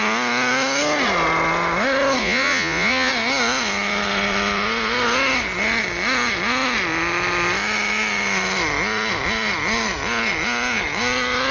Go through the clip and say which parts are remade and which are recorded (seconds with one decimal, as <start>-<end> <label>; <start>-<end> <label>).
0.0-2.2 recorded; 2.2-3.1 remade; 3.1-11.5 recorded